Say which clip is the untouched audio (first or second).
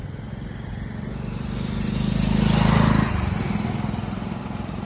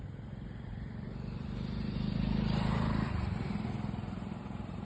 first